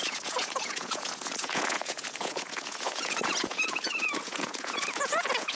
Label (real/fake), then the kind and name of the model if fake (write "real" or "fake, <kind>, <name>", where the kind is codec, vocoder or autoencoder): fake, vocoder, Vocos